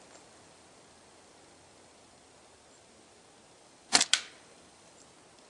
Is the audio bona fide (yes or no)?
yes